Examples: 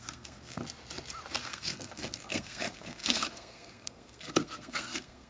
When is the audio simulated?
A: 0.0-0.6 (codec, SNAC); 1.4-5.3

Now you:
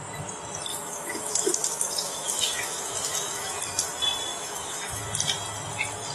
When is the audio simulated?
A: 0.7-3.6 (autoencoder, DAC-VAE); 4.3-5.0

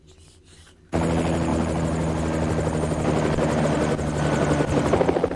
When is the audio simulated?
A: none

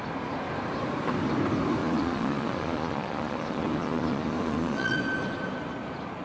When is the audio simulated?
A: 1.8-5.0 (vocoder, Vocos)